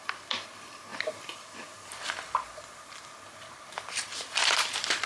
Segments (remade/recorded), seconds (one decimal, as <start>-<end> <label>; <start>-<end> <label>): 0.0-0.9 remade; 0.9-3.1 recorded; 3.1-5.1 remade